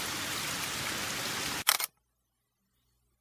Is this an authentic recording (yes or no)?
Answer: yes